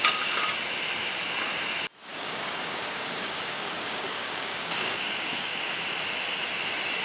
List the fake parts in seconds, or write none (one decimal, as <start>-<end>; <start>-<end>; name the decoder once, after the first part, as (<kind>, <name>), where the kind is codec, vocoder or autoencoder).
2.1-5.7 (codec, DAC)